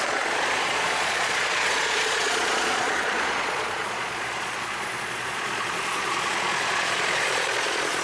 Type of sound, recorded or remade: remade